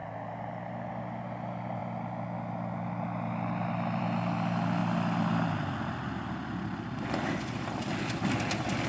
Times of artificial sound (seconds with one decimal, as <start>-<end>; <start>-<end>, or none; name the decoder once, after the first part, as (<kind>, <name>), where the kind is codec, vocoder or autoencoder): none